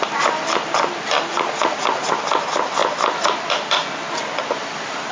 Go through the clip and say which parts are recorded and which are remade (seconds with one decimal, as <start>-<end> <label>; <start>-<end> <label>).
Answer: 0.0-1.3 recorded; 1.3-2.2 remade; 2.2-5.1 recorded